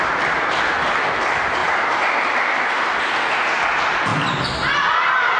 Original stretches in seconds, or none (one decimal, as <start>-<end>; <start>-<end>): 0.0-1.6; 3.0-5.4

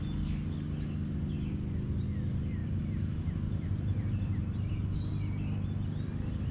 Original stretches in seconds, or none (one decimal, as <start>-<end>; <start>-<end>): 0.0-2.6; 4.4-6.5

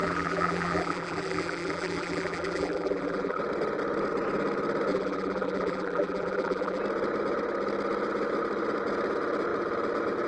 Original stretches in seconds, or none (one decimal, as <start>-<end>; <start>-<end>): 3.4-4.9; 6.8-10.3

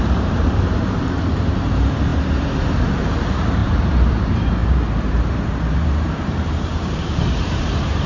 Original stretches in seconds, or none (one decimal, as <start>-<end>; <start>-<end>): none

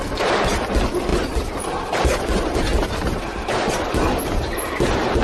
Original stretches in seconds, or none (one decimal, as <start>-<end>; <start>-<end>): 0.0-5.2

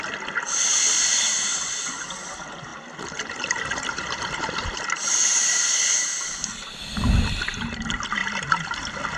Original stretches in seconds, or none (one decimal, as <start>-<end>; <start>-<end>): 0.0-2.7; 4.8-9.2

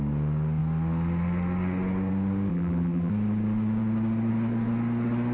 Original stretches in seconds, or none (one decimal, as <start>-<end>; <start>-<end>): 0.0-2.5; 3.1-5.3